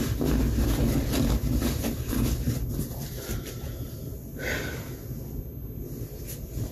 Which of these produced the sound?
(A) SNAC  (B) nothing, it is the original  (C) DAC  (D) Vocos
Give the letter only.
B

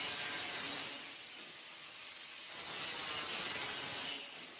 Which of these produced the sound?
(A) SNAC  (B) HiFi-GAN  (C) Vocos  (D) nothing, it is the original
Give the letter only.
D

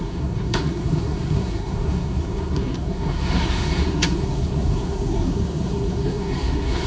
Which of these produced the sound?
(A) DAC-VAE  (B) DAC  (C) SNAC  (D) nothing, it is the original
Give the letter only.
C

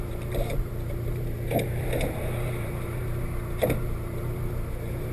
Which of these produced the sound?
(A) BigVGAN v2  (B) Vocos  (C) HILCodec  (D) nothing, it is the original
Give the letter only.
A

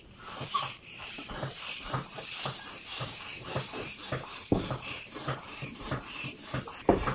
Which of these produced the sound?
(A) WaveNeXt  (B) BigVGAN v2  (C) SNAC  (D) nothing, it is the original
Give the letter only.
B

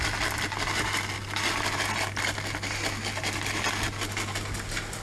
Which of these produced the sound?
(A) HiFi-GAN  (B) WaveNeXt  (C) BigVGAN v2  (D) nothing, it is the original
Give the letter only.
D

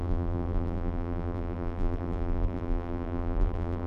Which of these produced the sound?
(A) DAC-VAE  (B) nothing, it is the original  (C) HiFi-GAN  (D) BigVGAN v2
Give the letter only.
D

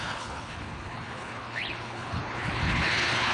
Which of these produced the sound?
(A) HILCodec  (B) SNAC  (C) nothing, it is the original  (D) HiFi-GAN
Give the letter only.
A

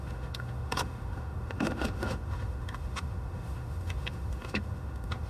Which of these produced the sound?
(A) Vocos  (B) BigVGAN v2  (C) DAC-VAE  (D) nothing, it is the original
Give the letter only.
C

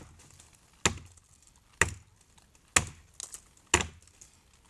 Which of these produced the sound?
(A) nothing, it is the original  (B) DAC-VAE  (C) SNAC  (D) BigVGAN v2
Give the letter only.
A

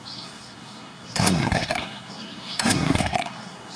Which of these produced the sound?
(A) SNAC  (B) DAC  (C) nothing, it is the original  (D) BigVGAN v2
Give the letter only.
A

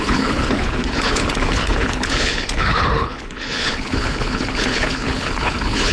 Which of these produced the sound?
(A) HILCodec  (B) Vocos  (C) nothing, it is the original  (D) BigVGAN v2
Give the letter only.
A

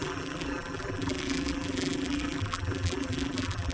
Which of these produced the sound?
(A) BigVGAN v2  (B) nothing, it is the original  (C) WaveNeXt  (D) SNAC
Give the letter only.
A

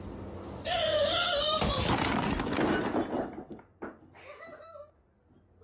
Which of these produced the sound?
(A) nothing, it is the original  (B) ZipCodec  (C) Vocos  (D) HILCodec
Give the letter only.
A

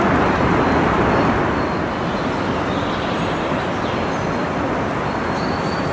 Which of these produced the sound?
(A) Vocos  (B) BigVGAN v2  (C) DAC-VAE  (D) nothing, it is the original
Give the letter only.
D